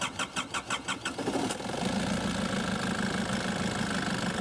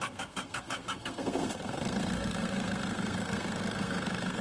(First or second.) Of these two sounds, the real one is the first